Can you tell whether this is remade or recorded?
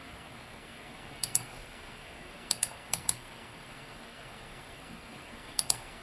remade